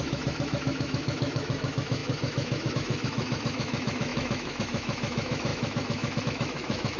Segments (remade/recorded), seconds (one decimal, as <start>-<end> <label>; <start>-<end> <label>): 0.0-7.0 remade